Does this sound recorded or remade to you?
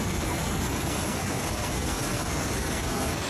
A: remade